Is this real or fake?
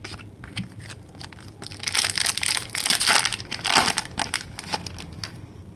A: real